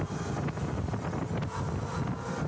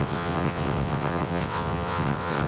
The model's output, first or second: second